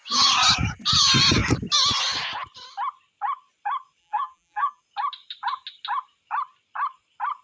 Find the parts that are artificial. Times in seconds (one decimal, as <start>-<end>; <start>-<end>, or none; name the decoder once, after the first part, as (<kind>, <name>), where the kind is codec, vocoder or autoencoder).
4.0-4.8 (vocoder, BigVGAN v2)